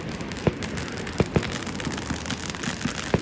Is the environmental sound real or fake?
real